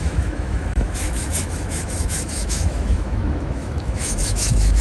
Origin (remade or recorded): remade